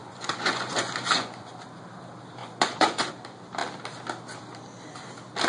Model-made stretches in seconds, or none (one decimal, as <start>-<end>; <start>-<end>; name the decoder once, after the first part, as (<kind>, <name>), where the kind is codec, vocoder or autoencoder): 0.0-1.5 (vocoder, Vocos); 2.4-3.1